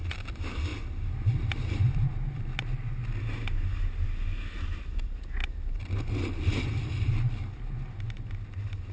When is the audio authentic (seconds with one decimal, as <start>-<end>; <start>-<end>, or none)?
0.0-8.9